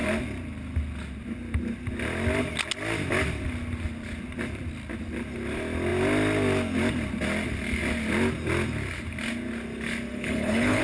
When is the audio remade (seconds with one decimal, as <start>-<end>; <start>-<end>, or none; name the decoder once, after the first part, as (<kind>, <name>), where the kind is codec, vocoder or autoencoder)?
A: 10.1-10.8 (codec, HILCodec)